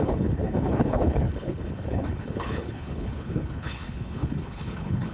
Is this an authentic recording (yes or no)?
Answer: no